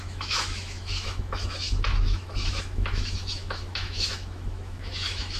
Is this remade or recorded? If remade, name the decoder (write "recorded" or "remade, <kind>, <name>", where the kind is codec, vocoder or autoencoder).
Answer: remade, autoencoder, DAC-VAE